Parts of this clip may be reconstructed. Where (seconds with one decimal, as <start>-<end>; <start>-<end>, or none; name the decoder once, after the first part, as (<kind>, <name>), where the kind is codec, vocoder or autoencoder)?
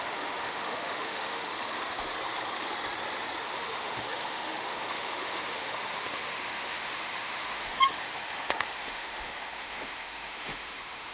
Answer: 0.0-1.5 (autoencoder, DAC-VAE); 3.5-11.1